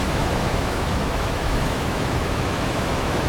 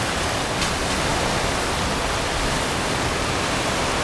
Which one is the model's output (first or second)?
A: first